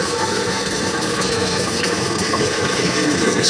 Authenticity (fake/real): fake